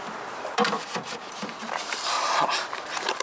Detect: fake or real fake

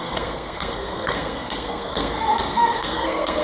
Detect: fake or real fake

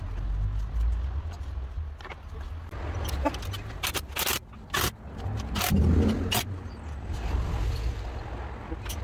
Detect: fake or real real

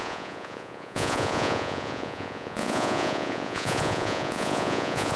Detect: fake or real fake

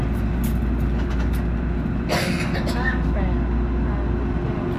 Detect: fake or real real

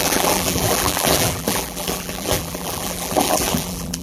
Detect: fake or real fake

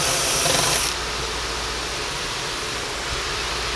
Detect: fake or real fake